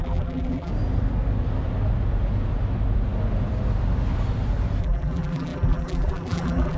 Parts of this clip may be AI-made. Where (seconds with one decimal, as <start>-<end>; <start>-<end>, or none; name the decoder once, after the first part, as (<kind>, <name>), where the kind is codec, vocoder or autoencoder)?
0.0-0.7 (vocoder, BigVGAN v2); 4.8-6.8